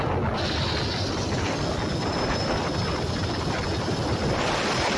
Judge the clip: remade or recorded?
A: recorded